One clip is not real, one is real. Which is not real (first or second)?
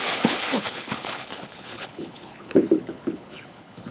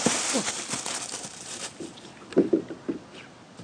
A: first